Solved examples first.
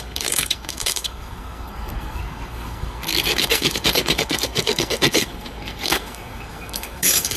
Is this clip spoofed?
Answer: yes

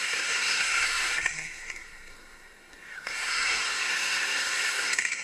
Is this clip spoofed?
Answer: yes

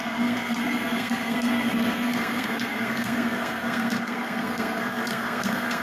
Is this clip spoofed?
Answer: yes